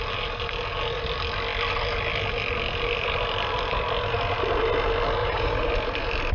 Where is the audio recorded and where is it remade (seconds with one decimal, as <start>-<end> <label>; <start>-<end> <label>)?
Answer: 0.0-5.2 recorded; 5.2-5.7 remade; 5.7-6.3 recorded